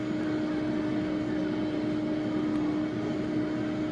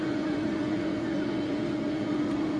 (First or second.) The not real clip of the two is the second